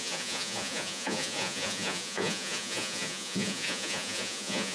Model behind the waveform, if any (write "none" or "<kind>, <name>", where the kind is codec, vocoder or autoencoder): vocoder, Vocos